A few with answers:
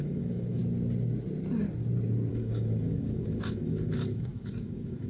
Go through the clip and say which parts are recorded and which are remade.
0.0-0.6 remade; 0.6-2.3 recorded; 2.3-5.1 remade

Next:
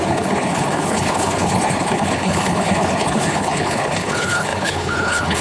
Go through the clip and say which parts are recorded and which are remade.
0.0-5.4 remade

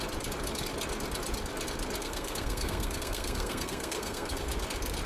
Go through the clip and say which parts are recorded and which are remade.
0.0-2.0 recorded; 2.0-4.5 remade; 4.5-5.1 recorded